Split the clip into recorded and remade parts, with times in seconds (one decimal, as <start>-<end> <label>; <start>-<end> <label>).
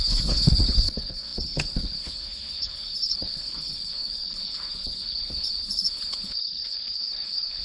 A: 0.0-7.6 remade